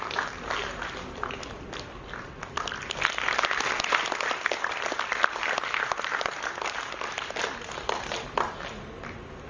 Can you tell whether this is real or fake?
real